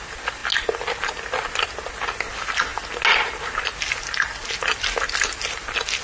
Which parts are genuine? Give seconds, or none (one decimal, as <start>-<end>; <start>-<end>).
0.0-6.0